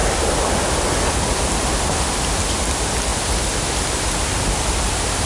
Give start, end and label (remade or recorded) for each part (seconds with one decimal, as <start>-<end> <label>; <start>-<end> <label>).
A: 0.0-5.3 recorded